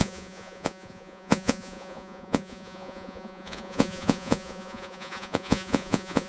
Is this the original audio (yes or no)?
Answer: no